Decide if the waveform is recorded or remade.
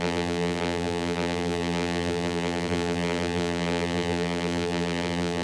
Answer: remade